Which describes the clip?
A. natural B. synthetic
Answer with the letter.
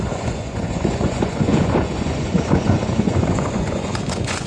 B